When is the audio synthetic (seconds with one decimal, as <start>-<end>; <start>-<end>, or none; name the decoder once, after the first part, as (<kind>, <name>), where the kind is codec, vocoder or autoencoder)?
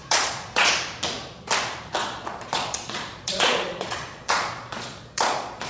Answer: 0.0-0.7 (vocoder, Vocos); 2.0-5.7